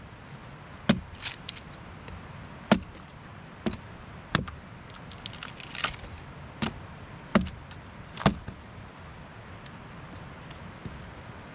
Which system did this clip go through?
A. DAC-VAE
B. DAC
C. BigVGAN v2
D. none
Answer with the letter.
D